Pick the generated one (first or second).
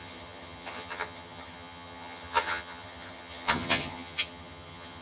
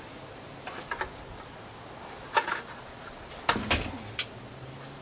first